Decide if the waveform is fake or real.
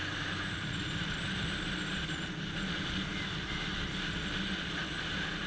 real